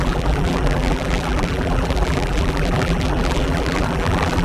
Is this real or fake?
fake